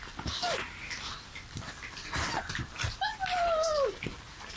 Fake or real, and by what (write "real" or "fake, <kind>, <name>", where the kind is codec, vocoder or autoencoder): real